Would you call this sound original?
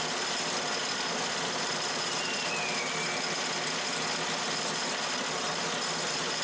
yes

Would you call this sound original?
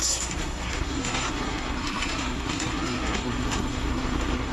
no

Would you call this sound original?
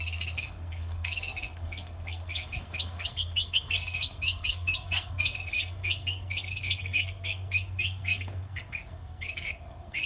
no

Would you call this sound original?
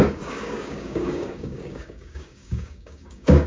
no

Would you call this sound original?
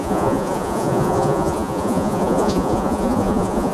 no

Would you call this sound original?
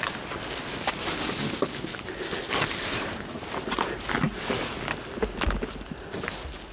yes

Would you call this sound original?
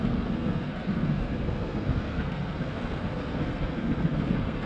no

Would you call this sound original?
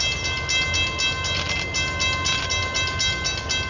yes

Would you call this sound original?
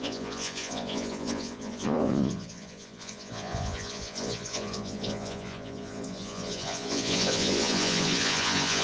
no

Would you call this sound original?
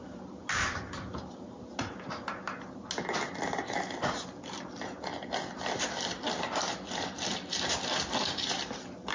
yes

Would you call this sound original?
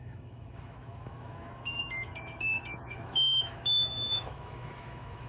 no